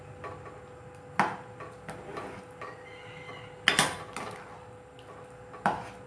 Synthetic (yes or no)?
no